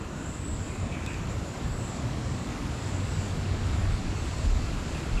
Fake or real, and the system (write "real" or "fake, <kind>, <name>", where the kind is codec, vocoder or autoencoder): fake, codec, DAC